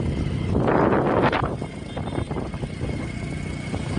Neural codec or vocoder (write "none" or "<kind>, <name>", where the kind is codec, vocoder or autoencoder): none